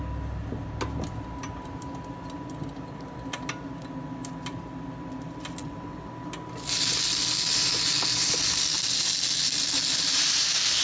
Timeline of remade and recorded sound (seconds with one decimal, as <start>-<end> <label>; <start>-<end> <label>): 0.0-5.6 recorded; 5.6-6.1 remade; 6.1-10.8 recorded